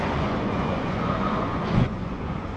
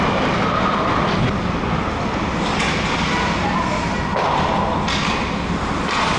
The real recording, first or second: second